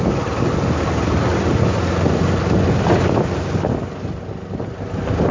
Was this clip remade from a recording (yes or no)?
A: no